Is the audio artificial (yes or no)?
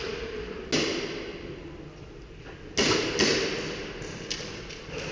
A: no